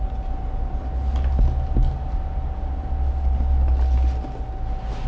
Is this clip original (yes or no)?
yes